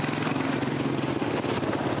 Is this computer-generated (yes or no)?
no